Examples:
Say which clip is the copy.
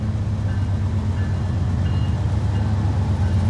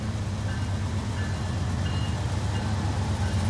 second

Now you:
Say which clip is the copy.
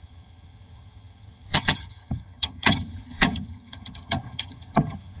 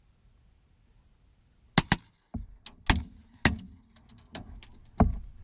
first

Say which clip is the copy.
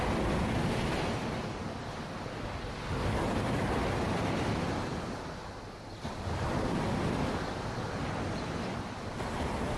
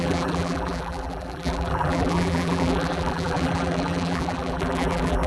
second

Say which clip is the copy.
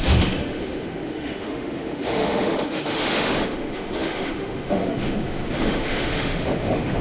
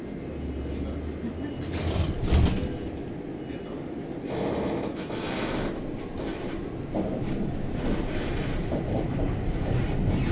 first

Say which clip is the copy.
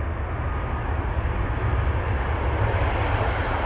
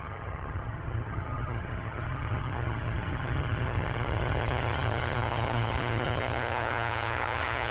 second